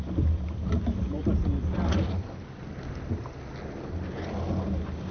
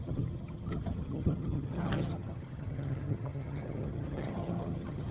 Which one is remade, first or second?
second